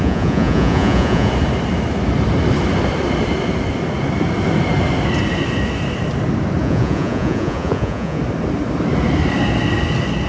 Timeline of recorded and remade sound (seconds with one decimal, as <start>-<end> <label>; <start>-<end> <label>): 0.0-1.3 remade; 1.3-6.6 recorded; 6.6-8.2 remade; 8.2-10.3 recorded